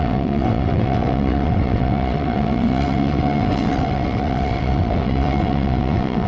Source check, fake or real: fake